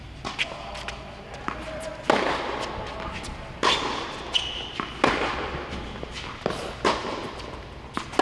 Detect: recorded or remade recorded